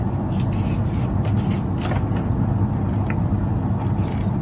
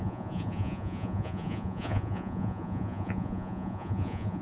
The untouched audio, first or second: first